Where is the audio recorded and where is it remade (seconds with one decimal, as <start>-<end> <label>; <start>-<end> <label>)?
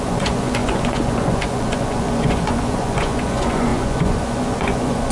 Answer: 0.0-5.1 remade